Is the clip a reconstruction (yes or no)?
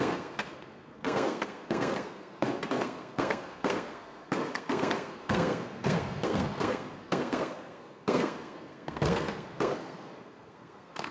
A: yes